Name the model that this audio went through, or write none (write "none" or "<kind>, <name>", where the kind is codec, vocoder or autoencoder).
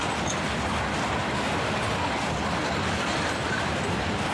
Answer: none